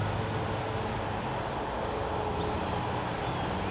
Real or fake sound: real